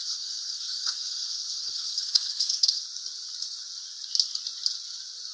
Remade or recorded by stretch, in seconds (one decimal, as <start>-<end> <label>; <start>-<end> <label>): 0.0-2.8 remade; 2.8-5.3 recorded